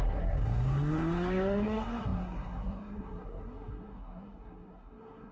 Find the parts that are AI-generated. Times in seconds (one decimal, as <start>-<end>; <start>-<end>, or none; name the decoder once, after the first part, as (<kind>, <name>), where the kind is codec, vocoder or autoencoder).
0.0-5.3 (codec, SNAC)